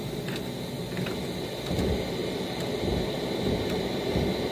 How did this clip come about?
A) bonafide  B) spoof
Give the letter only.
A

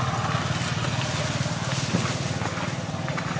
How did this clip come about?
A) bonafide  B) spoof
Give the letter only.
A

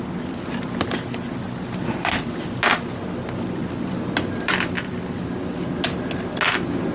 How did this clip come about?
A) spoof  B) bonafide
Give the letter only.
B